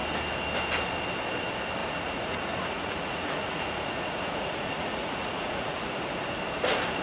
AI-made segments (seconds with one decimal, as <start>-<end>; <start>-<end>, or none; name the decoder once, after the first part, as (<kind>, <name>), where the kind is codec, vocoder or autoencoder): 1.8-6.0 (vocoder, Vocos)